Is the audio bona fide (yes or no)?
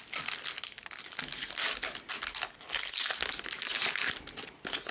yes